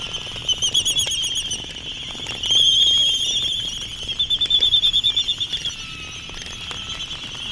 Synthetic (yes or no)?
no